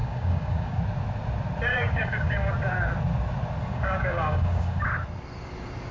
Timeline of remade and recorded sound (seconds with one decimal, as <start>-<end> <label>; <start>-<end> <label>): 0.0-0.8 remade; 0.8-1.7 recorded; 1.7-2.5 remade; 2.5-3.7 recorded; 3.7-4.8 remade; 4.8-5.9 recorded